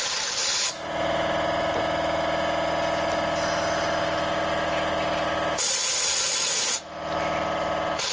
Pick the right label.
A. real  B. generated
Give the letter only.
A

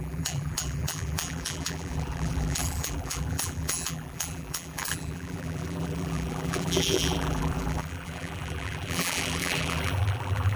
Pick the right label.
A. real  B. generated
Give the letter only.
B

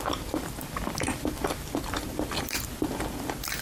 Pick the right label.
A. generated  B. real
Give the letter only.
A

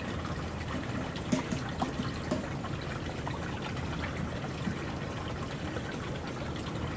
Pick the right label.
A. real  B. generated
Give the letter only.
A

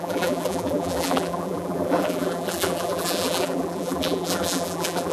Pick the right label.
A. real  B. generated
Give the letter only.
B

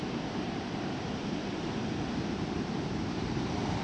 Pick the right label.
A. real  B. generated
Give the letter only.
B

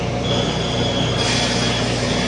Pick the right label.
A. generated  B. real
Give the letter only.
B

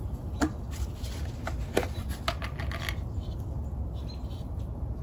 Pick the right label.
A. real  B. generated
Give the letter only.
A